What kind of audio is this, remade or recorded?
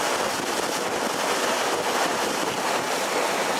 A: recorded